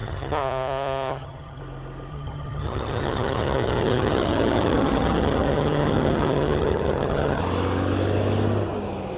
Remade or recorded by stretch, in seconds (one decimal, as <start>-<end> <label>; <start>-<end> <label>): 0.0-1.6 remade; 1.6-2.1 recorded; 2.1-7.4 remade; 7.4-9.2 recorded